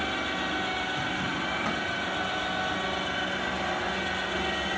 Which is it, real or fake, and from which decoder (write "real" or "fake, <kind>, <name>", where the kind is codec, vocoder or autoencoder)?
real